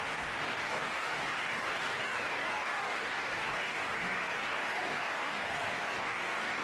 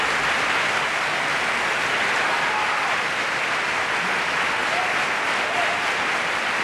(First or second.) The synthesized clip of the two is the first